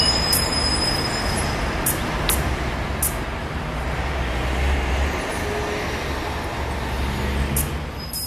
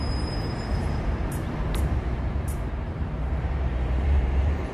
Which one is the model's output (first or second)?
second